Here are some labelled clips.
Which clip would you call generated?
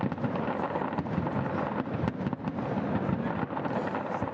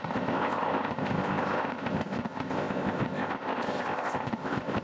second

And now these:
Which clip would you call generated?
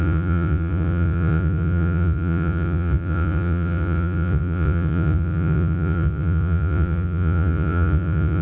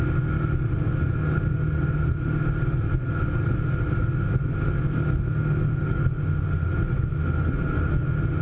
first